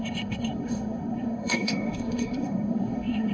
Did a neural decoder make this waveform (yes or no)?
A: yes